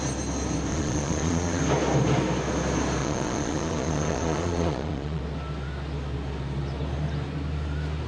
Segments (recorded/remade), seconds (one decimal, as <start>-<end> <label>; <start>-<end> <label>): 0.0-0.7 recorded; 0.7-1.6 remade; 1.6-3.0 recorded; 3.0-5.2 remade; 5.2-8.1 recorded